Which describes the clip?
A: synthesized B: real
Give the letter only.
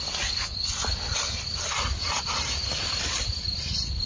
B